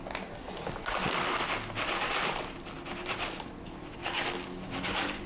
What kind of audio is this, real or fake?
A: real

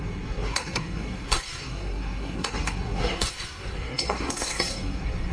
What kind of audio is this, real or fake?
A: fake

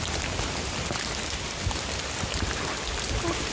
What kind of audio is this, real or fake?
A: real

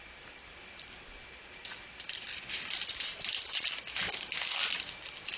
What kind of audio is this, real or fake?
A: real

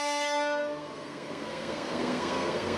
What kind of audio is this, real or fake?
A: fake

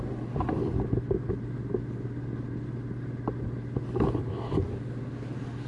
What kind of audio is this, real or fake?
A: real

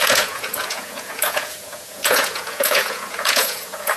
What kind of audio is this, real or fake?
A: fake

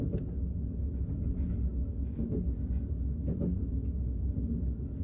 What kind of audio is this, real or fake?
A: real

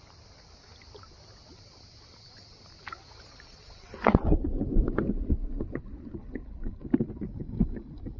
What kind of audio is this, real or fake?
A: real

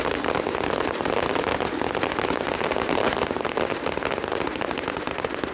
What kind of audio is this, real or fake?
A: real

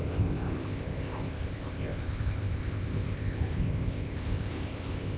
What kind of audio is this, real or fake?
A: fake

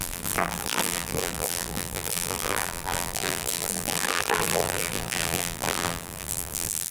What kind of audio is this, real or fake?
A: fake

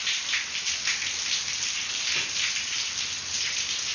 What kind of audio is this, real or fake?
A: real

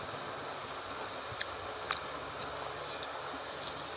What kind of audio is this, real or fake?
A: real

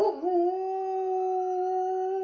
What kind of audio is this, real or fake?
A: real